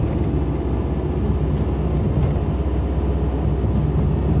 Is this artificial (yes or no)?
no